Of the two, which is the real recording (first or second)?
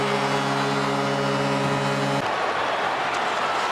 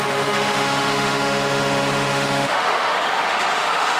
first